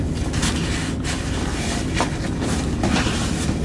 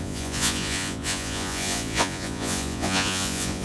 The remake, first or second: second